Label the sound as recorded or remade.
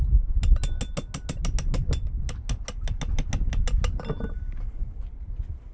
recorded